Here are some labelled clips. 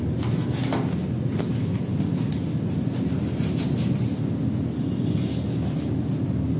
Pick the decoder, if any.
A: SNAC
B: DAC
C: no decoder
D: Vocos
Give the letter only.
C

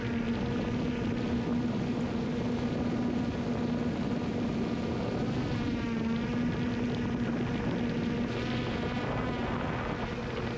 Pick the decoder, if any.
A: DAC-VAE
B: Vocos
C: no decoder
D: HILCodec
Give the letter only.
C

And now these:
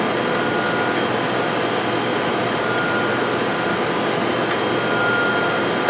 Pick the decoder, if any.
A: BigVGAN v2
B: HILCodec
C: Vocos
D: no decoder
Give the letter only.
D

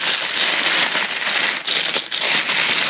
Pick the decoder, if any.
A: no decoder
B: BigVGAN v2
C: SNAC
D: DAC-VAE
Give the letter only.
A